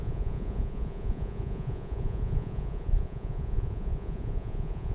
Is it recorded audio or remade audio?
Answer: remade